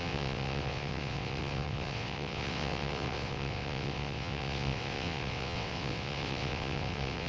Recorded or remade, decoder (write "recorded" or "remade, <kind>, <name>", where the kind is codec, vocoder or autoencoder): remade, vocoder, WaveNeXt